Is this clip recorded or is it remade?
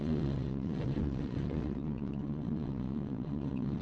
remade